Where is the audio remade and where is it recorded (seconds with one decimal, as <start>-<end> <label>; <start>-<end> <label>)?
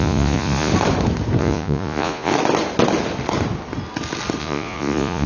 0.0-0.7 remade; 0.7-1.4 recorded; 1.4-2.3 remade; 2.3-4.4 recorded; 4.4-5.3 remade